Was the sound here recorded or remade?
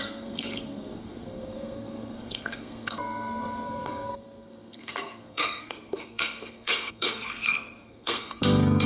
remade